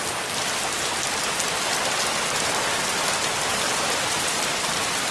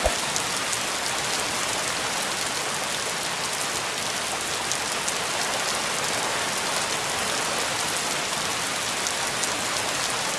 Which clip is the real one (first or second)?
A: second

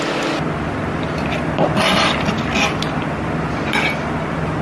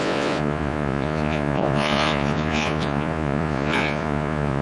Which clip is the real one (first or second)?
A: first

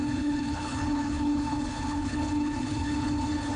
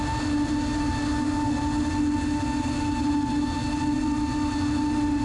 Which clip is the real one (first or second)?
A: second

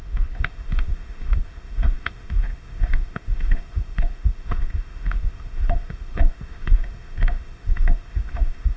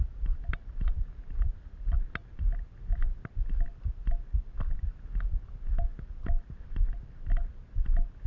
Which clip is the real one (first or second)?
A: second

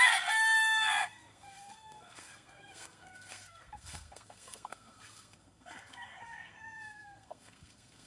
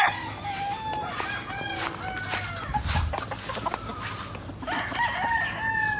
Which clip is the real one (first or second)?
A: second